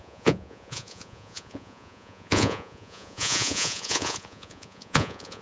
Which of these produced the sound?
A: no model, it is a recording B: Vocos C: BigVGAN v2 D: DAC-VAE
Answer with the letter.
B